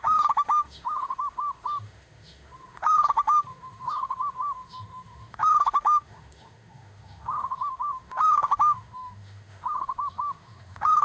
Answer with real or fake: fake